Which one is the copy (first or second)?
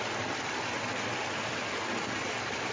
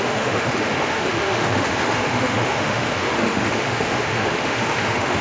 second